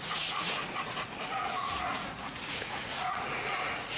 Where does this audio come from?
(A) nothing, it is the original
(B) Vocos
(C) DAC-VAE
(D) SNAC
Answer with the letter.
B